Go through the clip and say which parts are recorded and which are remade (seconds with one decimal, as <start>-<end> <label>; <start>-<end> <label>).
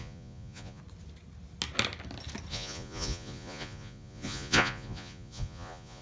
0.0-0.8 remade; 0.8-2.5 recorded; 2.5-6.0 remade